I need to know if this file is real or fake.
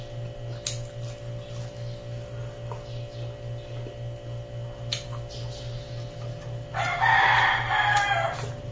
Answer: real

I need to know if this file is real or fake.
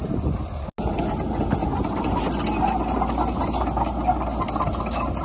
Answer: real